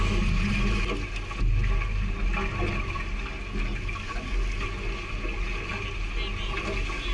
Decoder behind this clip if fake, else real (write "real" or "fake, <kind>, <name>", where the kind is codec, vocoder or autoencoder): real